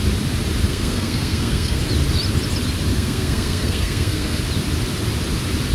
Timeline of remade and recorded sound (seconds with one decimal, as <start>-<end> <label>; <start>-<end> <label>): 0.0-0.7 recorded; 0.7-1.8 remade; 1.8-2.9 recorded; 2.9-4.4 remade; 4.4-5.7 recorded